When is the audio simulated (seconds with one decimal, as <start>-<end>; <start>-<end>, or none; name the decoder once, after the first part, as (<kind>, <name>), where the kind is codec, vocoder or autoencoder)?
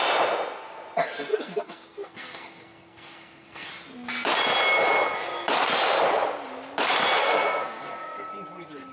1.3-3.7 (codec, SNAC); 7.2-8.3